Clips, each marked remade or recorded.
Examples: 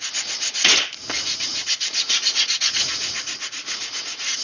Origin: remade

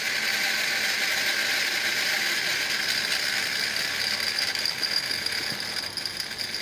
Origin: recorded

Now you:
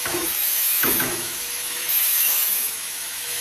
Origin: remade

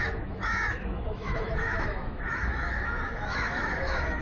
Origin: remade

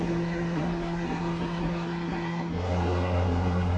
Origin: remade